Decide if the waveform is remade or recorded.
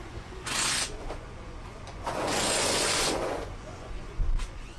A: remade